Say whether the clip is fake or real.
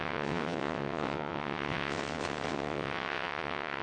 fake